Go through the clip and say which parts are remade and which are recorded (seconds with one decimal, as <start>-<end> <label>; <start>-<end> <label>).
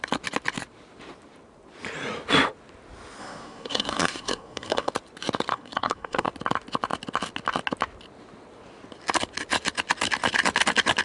0.0-3.2 recorded; 3.2-4.9 remade; 4.9-5.5 recorded; 5.5-6.3 remade; 6.3-11.0 recorded